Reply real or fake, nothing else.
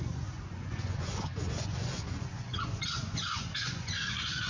fake